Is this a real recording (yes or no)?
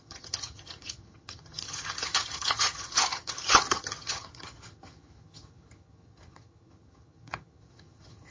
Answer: no